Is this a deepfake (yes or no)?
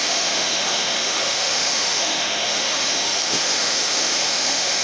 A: yes